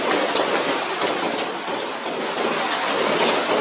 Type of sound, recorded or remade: recorded